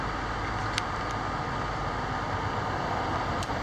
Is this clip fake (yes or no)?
no